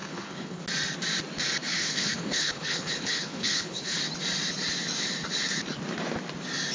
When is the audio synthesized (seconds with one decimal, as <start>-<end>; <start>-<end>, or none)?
0.0-0.6; 1.7-4.0